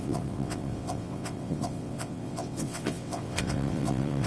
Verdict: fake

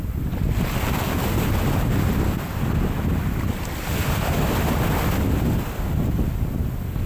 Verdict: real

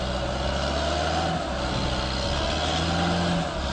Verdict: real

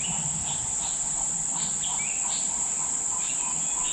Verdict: real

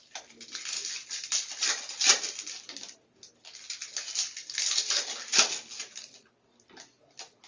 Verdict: real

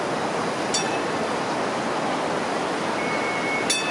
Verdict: real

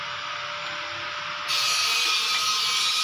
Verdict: real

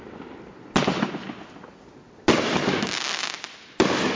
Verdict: real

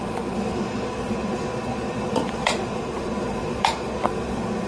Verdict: fake